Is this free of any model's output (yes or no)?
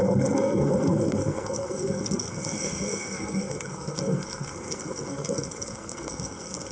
no